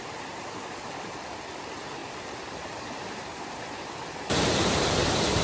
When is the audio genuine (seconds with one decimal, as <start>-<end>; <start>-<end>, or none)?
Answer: 0.0-2.0